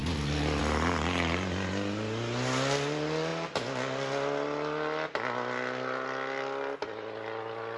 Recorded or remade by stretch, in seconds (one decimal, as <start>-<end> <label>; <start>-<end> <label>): 0.0-7.8 recorded